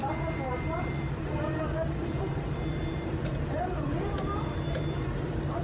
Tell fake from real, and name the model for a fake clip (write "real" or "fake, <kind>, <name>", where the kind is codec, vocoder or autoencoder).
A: fake, vocoder, BigVGAN v2